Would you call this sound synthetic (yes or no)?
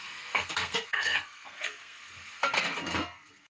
yes